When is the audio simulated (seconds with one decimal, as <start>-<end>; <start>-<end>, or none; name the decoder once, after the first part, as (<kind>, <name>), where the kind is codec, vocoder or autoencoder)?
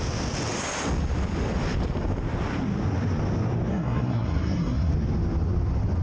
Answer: 3.7-4.9 (codec, SNAC)